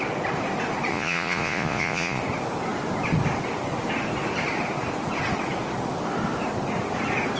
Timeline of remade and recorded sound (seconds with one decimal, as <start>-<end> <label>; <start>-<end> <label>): 0.0-0.9 recorded; 0.9-2.2 remade; 2.2-7.4 recorded